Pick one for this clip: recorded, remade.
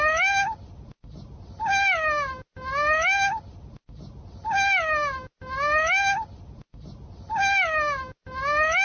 recorded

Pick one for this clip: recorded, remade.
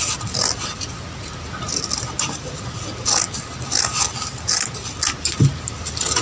recorded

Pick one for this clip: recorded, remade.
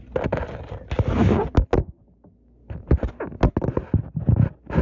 recorded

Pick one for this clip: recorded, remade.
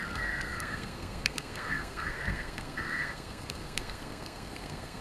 remade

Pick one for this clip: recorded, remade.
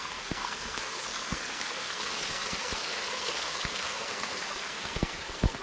remade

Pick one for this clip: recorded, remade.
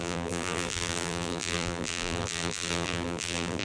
remade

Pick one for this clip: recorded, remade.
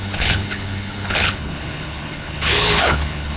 remade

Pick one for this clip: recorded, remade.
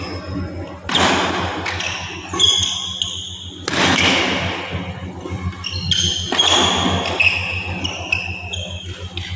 recorded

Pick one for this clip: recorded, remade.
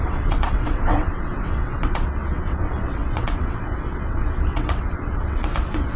remade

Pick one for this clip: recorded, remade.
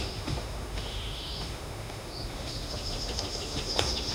remade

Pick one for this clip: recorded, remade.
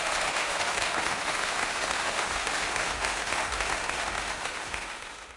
remade